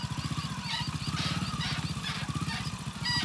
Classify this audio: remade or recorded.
recorded